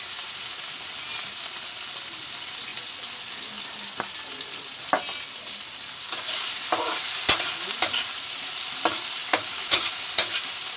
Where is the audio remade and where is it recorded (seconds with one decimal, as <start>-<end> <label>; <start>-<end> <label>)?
0.0-9.2 recorded; 9.2-9.9 remade; 9.9-10.8 recorded